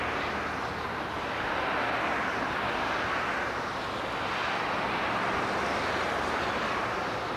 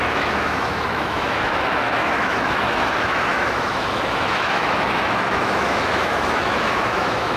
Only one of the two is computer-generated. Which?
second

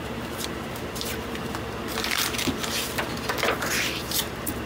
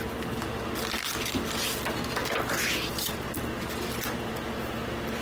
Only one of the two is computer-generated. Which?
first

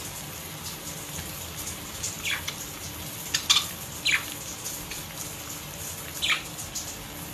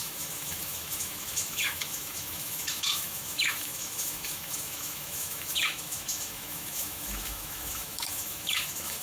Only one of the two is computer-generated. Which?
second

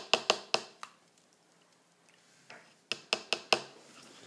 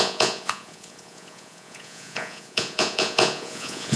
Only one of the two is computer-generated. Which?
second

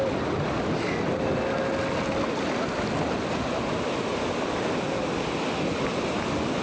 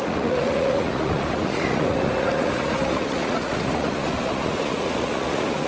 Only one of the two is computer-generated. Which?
second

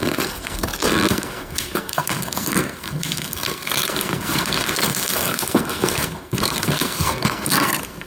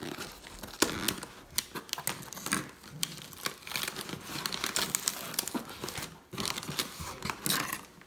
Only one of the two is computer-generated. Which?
first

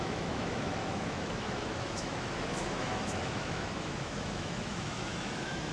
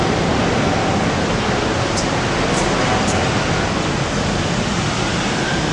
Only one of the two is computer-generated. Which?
first